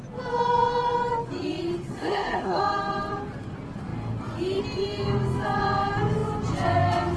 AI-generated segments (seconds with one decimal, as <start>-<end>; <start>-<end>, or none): 1.9-2.6